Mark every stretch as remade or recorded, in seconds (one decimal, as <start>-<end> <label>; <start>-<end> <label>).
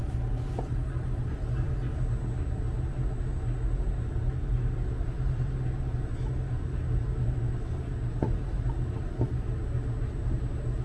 0.0-1.7 remade; 1.7-10.8 recorded